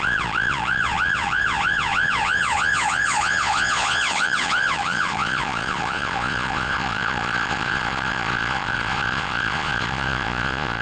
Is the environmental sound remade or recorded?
remade